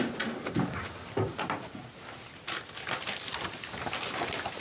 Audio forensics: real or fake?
real